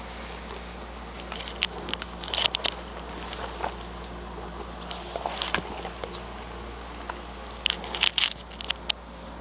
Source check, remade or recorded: recorded